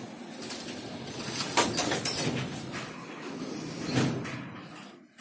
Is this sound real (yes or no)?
yes